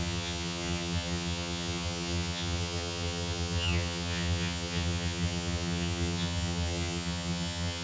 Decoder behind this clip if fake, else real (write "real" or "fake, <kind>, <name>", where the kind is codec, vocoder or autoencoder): fake, vocoder, HiFi-GAN